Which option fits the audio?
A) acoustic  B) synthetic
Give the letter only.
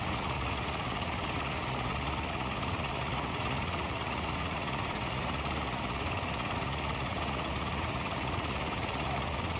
B